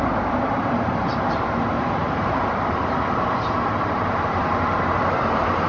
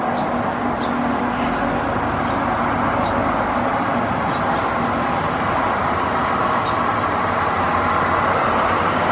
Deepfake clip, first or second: first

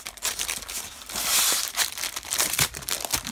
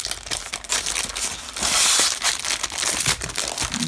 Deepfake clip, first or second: first